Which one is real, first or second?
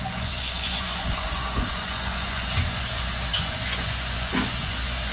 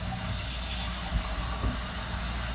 second